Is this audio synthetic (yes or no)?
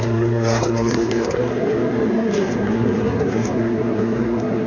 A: yes